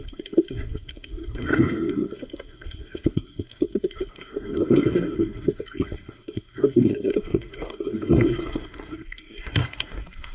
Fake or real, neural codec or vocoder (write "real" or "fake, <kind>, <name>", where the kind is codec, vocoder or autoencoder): fake, codec, SNAC